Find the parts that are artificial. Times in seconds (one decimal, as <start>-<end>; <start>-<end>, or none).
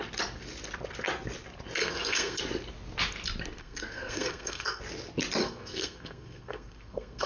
1.8-2.4; 3.6-4.8; 5.4-7.3